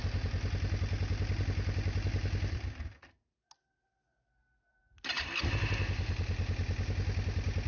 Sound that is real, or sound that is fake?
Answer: real